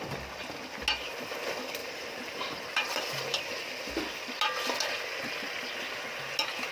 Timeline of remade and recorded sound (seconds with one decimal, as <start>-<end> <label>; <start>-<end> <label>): 0.0-1.8 recorded; 1.8-3.4 remade; 3.4-6.7 recorded